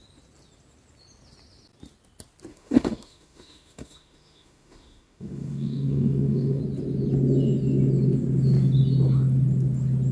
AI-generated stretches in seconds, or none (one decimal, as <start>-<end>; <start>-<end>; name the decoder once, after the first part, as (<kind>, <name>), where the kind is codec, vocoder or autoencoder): 2.5-6.6 (autoencoder, DAC-VAE)